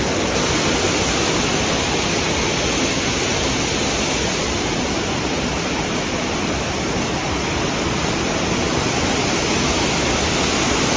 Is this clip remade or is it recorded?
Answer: recorded